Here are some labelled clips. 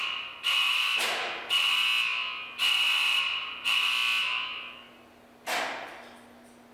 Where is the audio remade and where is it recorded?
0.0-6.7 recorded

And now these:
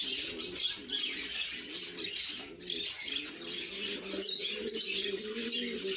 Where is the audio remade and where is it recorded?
0.0-6.0 recorded

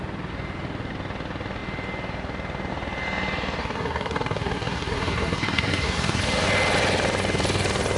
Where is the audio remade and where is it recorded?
0.0-3.6 recorded; 3.6-6.2 remade; 6.2-8.0 recorded